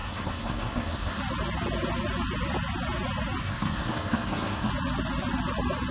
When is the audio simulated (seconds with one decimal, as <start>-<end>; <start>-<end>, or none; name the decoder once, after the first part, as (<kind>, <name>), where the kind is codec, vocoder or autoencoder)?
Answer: 0.0-1.2 (codec, SNAC); 3.4-4.7